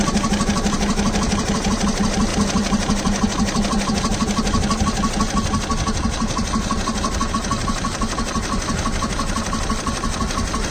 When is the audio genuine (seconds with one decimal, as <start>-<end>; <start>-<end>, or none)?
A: 0.0-10.7